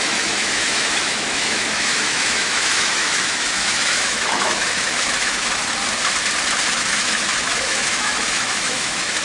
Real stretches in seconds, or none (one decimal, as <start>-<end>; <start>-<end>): 5.6-6.7